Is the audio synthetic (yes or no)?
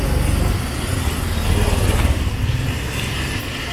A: no